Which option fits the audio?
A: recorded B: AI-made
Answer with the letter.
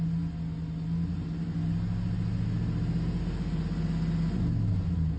A